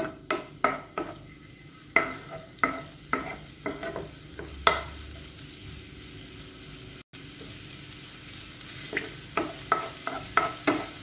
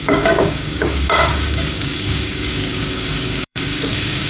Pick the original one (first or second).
first